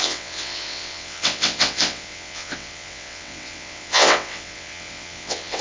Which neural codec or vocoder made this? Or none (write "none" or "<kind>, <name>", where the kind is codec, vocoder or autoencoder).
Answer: vocoder, WaveNeXt